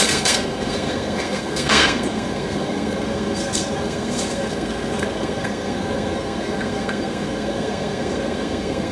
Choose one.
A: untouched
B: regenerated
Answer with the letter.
B